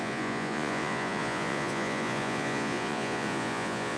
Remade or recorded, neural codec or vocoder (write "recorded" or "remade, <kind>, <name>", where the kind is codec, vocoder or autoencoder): remade, vocoder, Vocos